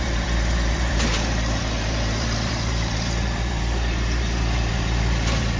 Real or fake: fake